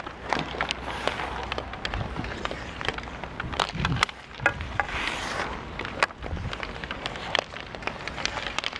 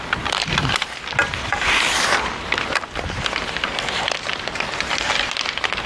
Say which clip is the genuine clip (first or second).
first